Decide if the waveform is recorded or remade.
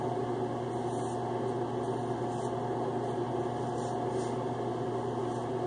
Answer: recorded